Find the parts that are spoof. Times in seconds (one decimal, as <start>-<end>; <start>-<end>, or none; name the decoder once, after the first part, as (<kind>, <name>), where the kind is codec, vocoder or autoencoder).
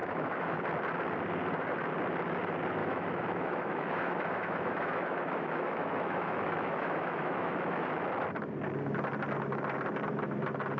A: 0.0-0.6 (autoencoder, DAC-VAE); 2.8-7.9